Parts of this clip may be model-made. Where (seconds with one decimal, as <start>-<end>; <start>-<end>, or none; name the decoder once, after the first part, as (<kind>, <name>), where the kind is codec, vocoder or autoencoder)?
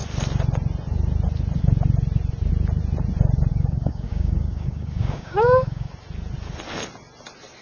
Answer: 3.5-5.9 (codec, DAC)